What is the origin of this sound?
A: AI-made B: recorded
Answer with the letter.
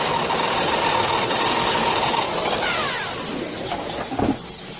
B